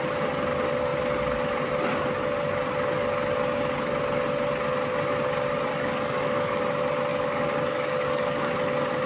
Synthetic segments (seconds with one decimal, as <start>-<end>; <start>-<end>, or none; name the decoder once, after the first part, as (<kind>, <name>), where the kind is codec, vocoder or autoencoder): 5.7-6.6 (codec, DAC); 7.1-8.5